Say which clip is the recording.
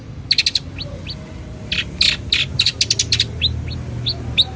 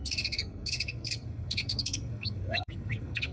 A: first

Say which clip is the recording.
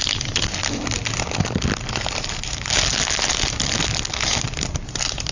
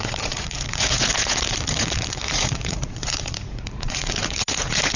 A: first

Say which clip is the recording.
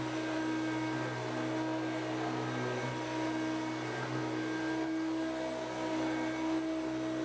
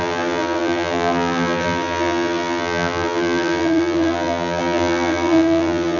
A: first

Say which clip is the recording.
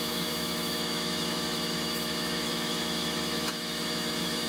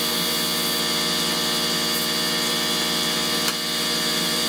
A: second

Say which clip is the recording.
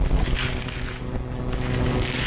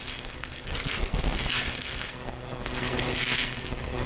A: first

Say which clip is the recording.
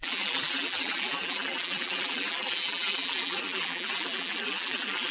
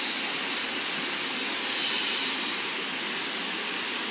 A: second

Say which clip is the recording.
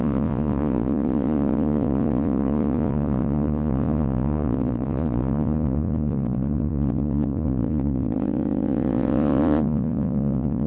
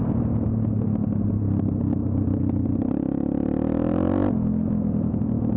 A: second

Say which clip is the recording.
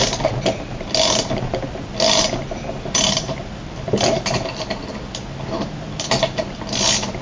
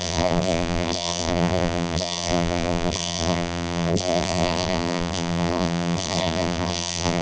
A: first